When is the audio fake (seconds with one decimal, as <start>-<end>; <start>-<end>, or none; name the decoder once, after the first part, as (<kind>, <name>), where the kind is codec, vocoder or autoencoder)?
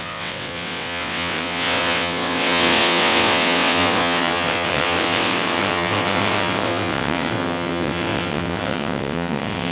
0.0-9.7 (vocoder, WaveNeXt)